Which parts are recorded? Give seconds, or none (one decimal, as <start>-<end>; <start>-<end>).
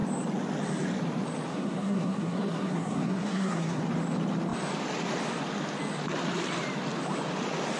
0.0-1.5; 3.8-7.8